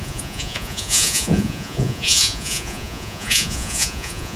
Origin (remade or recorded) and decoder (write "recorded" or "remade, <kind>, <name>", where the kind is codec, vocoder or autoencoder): remade, vocoder, Vocos